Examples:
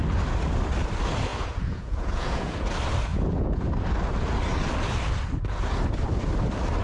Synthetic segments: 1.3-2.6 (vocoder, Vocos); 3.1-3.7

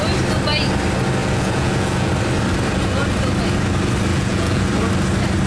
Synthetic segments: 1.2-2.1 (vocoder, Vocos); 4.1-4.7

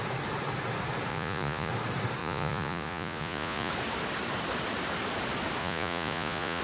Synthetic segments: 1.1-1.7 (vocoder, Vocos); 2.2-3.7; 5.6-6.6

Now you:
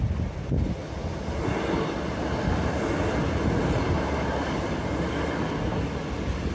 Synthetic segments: none